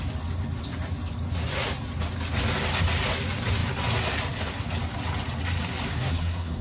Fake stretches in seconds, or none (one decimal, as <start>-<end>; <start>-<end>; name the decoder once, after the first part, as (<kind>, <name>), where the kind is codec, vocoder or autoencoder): 6.0-6.6 (codec, SNAC)

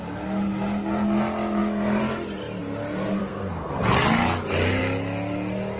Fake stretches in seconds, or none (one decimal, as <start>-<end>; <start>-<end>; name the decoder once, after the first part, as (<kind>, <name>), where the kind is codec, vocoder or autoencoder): 3.2-3.7 (codec, SNAC)

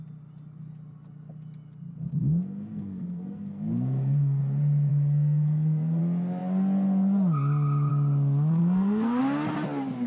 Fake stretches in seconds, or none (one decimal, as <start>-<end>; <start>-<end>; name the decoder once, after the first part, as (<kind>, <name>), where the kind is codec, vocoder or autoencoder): 2.1-4.4 (codec, SNAC); 4.9-6.0; 8.6-9.2

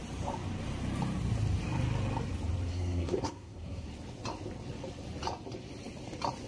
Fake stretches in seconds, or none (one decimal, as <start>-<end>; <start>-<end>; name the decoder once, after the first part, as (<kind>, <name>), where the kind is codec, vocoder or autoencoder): 2.7-3.9 (codec, SNAC)

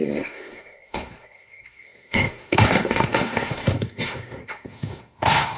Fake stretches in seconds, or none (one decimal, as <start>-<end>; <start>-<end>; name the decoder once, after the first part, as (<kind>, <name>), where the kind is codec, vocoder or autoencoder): 0.0-5.6 (codec, SNAC)

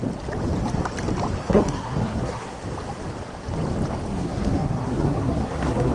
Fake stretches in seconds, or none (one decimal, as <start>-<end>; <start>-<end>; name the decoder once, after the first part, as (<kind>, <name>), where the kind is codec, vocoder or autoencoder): 1.4-2.6 (codec, SNAC); 4.1-5.9

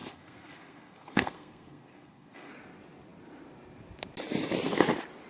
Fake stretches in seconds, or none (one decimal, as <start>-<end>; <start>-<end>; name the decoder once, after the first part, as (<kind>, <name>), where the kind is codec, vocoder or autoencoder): 0.0-2.5 (codec, SNAC)

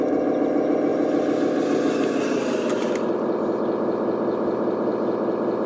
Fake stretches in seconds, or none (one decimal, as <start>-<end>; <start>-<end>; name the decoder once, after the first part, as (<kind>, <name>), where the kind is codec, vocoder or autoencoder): none